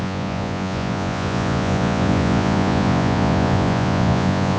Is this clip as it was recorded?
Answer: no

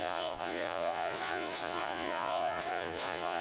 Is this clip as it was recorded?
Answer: no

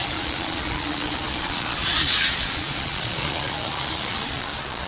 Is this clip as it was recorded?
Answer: no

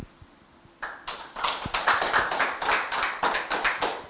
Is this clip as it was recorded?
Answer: yes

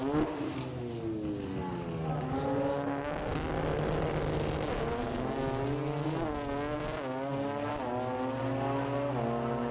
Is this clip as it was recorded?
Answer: yes